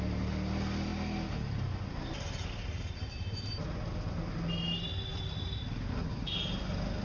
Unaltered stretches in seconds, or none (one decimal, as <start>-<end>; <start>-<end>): 0.0-7.0